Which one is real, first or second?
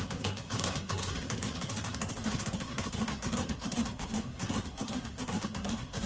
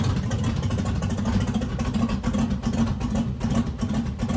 second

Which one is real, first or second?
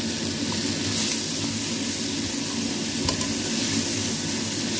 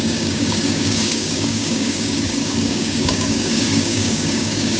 first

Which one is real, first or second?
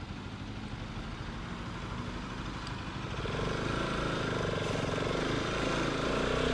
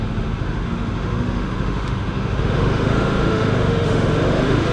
first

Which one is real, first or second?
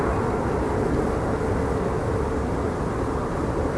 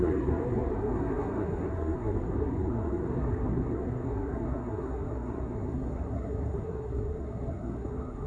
first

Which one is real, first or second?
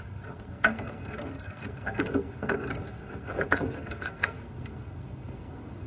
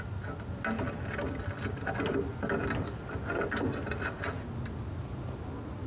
second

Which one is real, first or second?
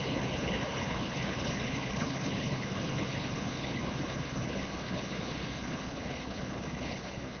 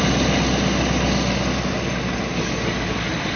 second